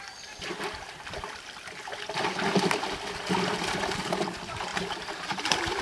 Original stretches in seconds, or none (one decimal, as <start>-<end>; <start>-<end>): 0.0-4.7

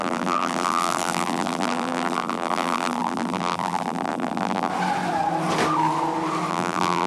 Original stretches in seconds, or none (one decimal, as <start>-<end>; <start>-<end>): 4.7-6.5

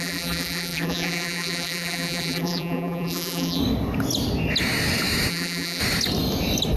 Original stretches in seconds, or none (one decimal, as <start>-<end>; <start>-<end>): 3.6-5.3; 5.8-6.8

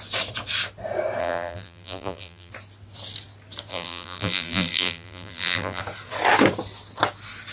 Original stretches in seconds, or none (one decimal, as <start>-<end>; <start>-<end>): 0.0-1.2; 2.5-3.7; 5.8-7.5